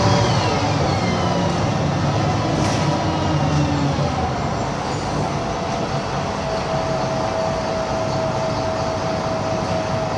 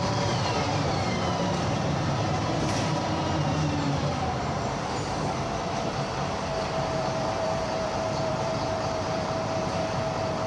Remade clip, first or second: second